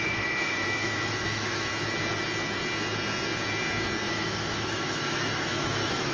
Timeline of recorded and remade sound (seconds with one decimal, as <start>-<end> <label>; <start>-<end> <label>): 0.0-1.7 remade; 1.7-4.1 recorded; 4.1-6.1 remade